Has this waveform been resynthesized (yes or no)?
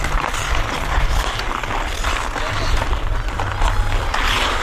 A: no